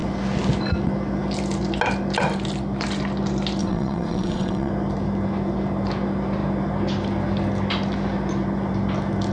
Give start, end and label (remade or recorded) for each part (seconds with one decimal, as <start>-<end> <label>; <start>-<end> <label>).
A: 0.0-3.6 recorded; 3.6-4.7 remade; 4.7-9.3 recorded